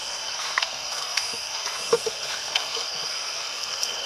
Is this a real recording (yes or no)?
no